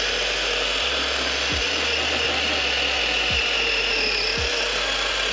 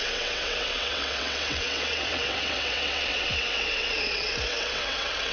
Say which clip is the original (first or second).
first